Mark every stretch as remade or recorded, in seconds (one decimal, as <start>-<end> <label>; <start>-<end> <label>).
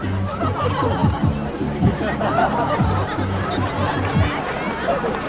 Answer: 0.0-5.3 recorded